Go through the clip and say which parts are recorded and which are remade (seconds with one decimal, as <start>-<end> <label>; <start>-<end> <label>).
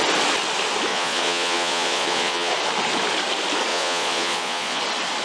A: 0.0-0.9 recorded; 0.9-2.5 remade; 2.5-3.7 recorded; 3.7-4.8 remade; 4.8-5.2 recorded